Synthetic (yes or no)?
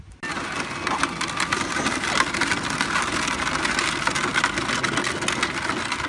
no